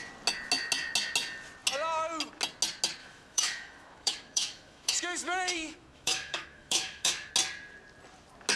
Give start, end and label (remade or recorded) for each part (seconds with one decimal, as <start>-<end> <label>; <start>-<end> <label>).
0.0-3.0 recorded; 3.0-7.3 remade; 7.3-8.6 recorded